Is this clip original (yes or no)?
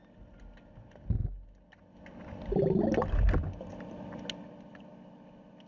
yes